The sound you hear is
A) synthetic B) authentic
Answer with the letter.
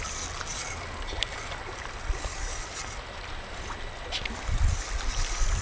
B